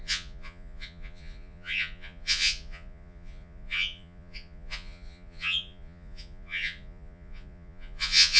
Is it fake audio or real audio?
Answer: fake